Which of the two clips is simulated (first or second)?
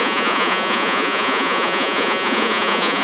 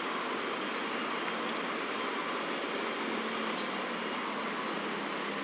first